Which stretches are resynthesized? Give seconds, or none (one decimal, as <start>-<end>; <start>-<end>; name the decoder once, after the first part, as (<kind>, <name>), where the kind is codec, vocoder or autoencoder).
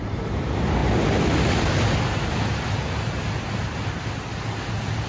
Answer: none